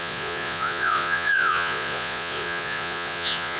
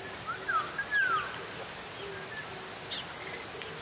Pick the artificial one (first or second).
first